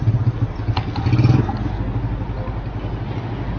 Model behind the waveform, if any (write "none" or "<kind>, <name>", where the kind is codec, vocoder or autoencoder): none